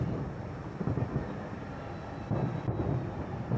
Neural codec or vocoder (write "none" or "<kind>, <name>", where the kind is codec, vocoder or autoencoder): none